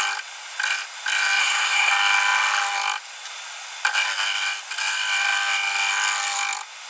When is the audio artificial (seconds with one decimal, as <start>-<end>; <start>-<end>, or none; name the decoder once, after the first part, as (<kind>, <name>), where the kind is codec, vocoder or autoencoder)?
1.4-1.9 (codec, SNAC)